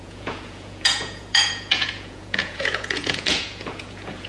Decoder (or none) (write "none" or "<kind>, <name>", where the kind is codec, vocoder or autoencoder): vocoder, Vocos